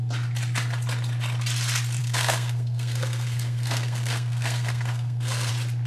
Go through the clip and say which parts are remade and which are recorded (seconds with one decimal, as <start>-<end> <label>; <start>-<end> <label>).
0.0-2.0 recorded; 2.0-5.5 remade; 5.5-5.9 recorded